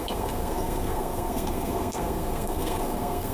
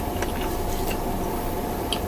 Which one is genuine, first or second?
second